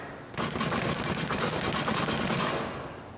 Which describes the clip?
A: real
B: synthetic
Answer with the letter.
A